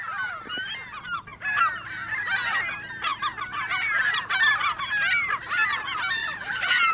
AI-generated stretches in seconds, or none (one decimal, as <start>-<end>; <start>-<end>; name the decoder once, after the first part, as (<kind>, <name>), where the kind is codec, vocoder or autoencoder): 6.2-6.9 (vocoder, BigVGAN v2)